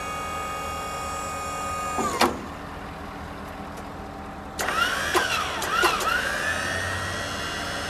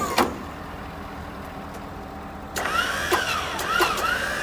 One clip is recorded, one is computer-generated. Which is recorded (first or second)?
first